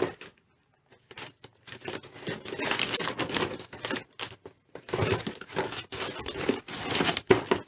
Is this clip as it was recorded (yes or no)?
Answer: yes